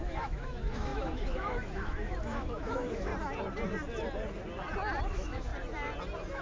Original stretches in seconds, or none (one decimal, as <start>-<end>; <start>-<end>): 3.1-5.0; 5.5-6.4